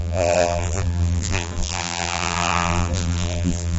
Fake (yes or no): yes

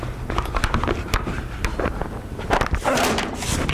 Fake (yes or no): no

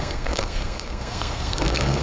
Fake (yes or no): yes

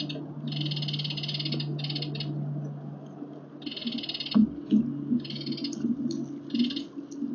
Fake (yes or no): no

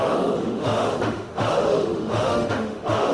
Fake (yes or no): yes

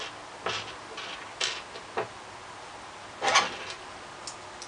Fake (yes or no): no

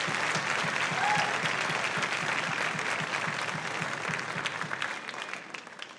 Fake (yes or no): no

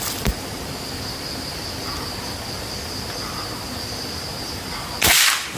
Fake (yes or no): yes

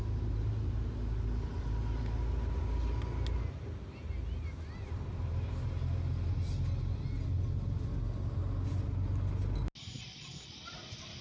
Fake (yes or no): no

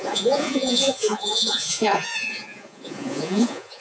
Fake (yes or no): yes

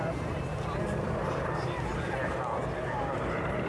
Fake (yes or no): yes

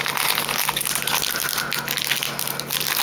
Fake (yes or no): no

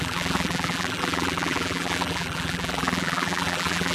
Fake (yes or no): yes